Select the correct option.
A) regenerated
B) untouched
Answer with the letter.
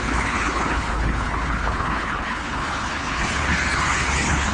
A